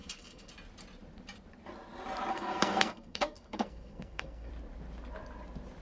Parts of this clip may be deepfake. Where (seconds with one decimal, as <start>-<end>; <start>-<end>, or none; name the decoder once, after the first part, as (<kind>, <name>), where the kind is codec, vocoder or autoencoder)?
0.0-0.5 (codec, SNAC); 2.3-4.5